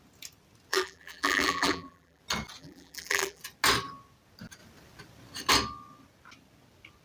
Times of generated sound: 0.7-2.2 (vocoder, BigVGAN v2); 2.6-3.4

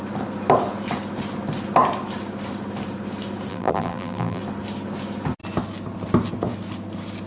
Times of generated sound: 3.5-4.4 (vocoder, BigVGAN v2)

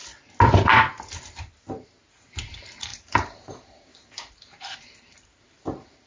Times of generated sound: 2.4-6.1 (vocoder, BigVGAN v2)

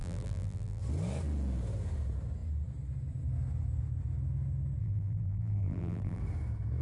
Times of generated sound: 0.0-0.8 (vocoder, BigVGAN v2); 4.8-6.2

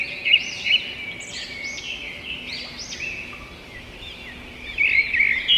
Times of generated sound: 0.0-0.9 (vocoder, BigVGAN v2)